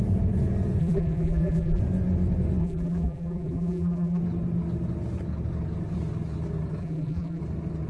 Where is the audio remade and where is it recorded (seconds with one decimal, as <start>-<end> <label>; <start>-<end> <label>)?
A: 0.0-0.8 recorded; 0.8-1.8 remade; 1.8-2.6 recorded; 2.6-4.2 remade; 4.2-6.8 recorded; 6.8-7.4 remade; 7.4-7.9 recorded